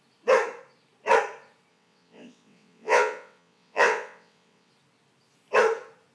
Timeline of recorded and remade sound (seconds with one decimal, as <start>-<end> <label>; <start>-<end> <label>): 0.0-1.7 recorded; 1.7-4.7 remade; 4.7-6.1 recorded